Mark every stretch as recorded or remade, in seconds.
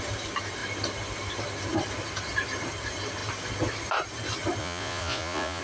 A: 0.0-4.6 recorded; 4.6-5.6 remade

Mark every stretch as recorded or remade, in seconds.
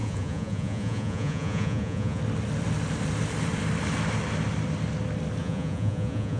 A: 0.0-2.2 remade; 2.2-5.4 recorded; 5.4-6.4 remade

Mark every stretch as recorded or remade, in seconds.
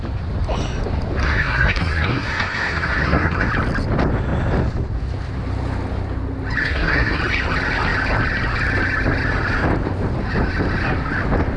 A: 0.0-1.2 recorded; 1.2-3.5 remade; 3.5-6.6 recorded; 6.6-7.2 remade; 7.2-11.6 recorded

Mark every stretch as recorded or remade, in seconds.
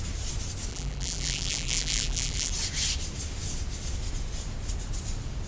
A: 0.0-0.7 recorded; 0.7-2.5 remade; 2.5-5.5 recorded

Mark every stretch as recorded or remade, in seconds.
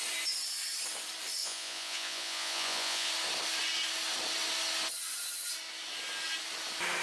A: 0.0-1.4 recorded; 1.4-3.1 remade; 3.1-7.0 recorded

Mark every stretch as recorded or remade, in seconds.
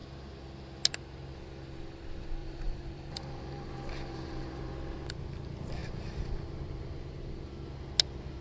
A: 0.0-2.4 recorded; 2.4-4.7 remade; 4.7-5.8 recorded; 5.8-7.5 remade; 7.5-8.4 recorded